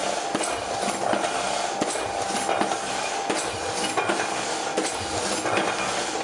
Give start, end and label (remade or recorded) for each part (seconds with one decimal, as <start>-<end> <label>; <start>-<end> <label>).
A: 0.0-6.2 recorded